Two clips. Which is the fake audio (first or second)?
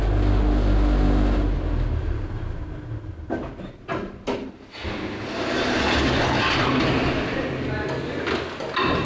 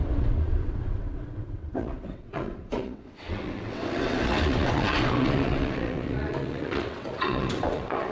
second